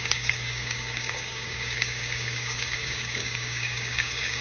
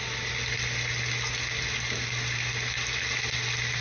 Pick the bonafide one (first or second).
second